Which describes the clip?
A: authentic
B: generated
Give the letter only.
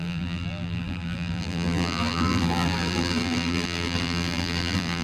B